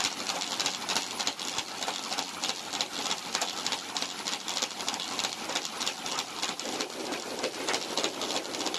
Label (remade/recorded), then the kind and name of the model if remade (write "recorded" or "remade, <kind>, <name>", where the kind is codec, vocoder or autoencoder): recorded